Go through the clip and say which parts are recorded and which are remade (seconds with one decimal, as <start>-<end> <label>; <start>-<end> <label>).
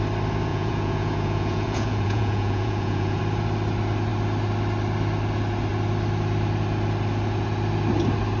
0.0-0.5 recorded; 0.5-3.2 remade; 3.2-8.4 recorded